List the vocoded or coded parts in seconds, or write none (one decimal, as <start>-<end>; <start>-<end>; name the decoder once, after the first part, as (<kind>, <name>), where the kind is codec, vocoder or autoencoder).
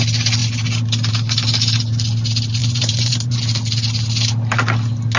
2.6-3.4 (vocoder, BigVGAN v2)